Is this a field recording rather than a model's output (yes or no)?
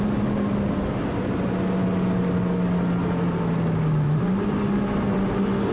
yes